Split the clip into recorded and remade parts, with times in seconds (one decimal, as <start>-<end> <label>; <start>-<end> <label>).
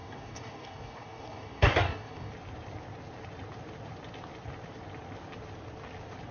0.0-2.3 remade; 2.3-6.3 recorded